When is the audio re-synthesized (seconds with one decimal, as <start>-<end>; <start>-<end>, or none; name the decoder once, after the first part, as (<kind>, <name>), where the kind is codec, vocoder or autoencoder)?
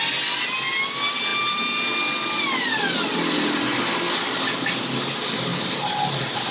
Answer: none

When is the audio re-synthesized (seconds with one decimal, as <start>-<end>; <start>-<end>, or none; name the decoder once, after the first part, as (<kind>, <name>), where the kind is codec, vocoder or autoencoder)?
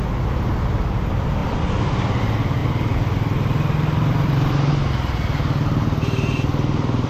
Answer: 1.4-2.2 (vocoder, BigVGAN v2); 2.6-4.7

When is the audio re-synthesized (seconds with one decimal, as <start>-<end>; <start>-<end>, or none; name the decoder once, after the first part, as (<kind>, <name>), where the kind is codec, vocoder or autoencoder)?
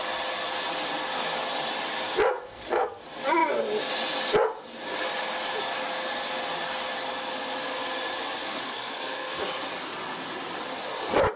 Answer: 2.4-3.0 (codec, SNAC); 8.4-9.4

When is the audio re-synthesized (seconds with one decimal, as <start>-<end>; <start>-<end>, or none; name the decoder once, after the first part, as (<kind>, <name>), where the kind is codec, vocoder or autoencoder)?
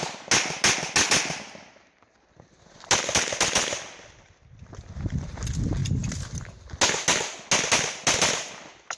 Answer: none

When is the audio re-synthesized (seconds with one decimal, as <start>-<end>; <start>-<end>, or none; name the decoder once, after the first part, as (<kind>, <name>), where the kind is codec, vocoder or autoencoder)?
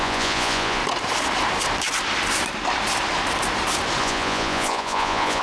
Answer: 0.0-0.8 (vocoder, Vocos); 4.0-5.4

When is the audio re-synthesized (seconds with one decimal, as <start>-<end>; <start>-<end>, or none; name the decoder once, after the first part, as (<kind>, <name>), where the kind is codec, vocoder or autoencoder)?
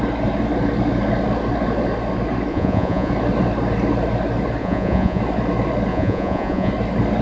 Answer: 2.5-3.1 (vocoder, Vocos); 4.6-5.2; 5.9-6.7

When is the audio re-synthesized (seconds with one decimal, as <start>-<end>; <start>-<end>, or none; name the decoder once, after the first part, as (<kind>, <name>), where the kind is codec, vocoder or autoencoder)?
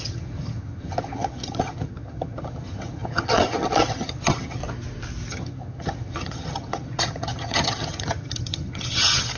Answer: 0.0-4.6 (vocoder, HiFi-GAN); 5.3-9.4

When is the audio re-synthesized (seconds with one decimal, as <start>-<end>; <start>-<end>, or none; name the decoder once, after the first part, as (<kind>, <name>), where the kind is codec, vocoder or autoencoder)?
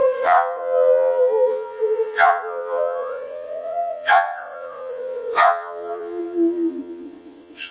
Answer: 0.0-7.7 (vocoder, Vocos)